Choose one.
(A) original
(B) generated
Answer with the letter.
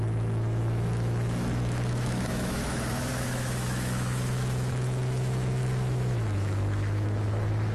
B